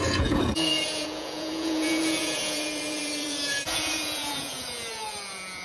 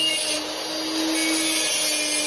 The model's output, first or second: first